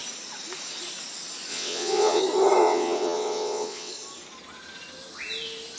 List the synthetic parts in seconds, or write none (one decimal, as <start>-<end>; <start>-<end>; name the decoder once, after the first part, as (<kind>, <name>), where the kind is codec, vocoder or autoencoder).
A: 1.5-2.2 (vocoder, WaveNeXt); 2.6-3.9